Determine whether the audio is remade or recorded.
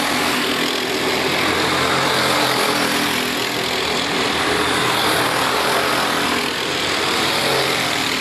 recorded